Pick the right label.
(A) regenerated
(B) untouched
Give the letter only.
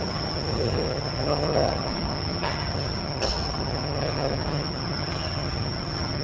A